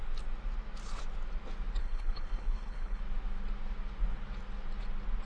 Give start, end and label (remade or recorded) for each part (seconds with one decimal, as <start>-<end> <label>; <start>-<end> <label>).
0.0-1.8 recorded; 1.8-3.0 remade; 3.0-5.3 recorded